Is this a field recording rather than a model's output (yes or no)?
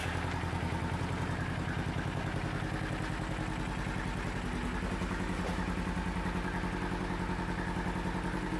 yes